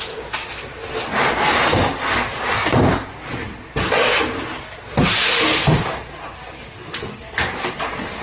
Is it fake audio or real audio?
real